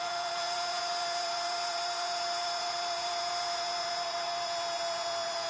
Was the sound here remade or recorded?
remade